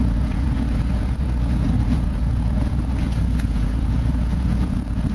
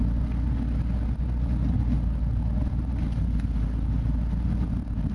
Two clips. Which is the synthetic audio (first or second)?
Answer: first